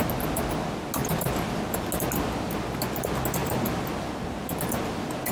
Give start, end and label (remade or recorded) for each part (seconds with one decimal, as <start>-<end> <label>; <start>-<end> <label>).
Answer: 0.0-5.3 recorded